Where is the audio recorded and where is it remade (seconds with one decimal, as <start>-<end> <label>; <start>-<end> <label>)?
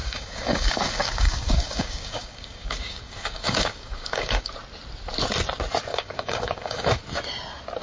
0.0-4.5 remade; 4.5-5.9 recorded; 5.9-7.0 remade; 7.0-7.8 recorded